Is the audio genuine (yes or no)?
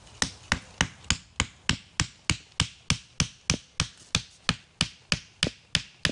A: yes